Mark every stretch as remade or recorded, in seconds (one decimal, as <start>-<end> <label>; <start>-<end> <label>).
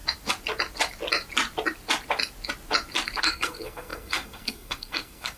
0.0-3.2 recorded; 3.2-5.4 remade